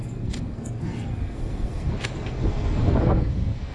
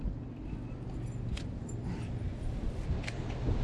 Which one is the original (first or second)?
second